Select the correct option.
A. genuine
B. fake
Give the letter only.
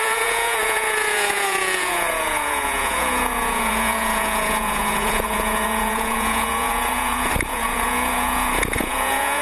B